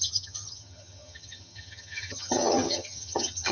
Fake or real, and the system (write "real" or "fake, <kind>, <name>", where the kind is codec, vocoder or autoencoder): fake, vocoder, HiFi-GAN